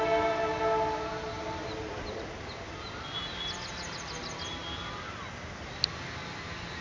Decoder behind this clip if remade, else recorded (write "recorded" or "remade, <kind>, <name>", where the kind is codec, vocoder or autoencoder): recorded